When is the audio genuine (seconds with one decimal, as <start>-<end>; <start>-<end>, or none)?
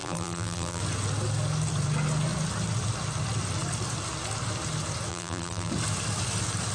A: 0.8-5.1; 5.7-6.7